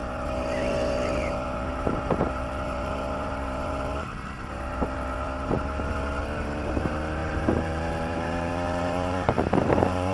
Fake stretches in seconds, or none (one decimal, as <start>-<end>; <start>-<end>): 0.0-10.1